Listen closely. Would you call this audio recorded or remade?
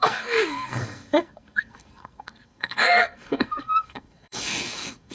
remade